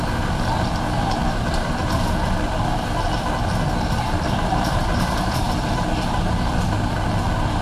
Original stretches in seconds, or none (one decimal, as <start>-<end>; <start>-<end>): 0.0-1.2; 2.2-4.8; 5.8-7.6

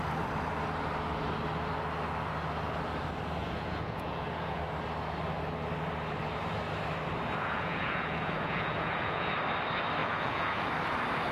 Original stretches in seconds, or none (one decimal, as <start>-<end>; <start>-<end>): 0.0-3.4; 4.6-7.4; 9.3-10.0; 10.7-11.3

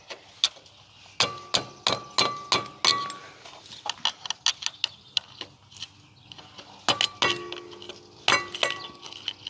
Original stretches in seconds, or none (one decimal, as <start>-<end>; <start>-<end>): 0.0-9.5